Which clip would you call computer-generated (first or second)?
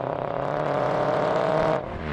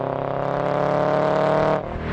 first